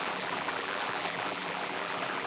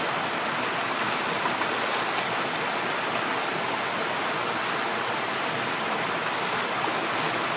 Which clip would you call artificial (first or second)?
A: first